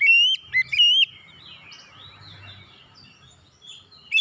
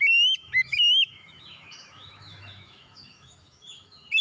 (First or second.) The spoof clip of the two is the second